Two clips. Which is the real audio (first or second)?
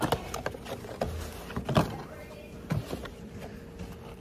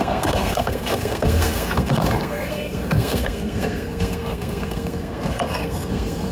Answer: first